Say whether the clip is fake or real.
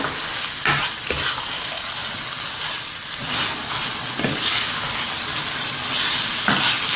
real